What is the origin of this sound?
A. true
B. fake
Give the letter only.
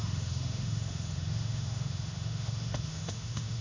B